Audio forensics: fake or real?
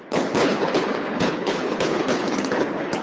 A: fake